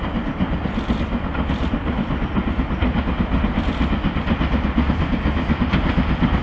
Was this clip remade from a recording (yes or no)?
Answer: no